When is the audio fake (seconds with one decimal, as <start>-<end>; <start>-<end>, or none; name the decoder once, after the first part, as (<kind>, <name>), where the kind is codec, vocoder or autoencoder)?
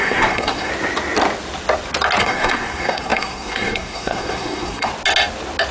0.0-0.7 (codec, SNAC); 2.2-4.9